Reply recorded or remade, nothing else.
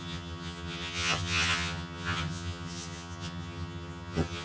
remade